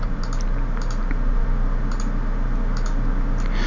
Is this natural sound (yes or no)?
yes